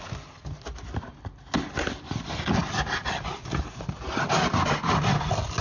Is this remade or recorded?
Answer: recorded